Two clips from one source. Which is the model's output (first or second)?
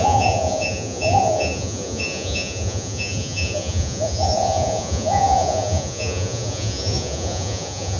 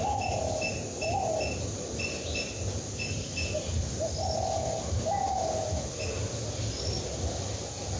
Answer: first